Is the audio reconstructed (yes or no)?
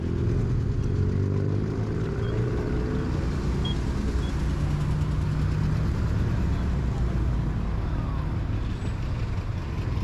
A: no